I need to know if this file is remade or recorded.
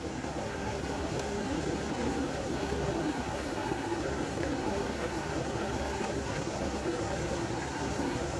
remade